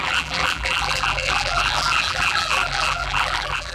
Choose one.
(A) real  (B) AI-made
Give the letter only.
B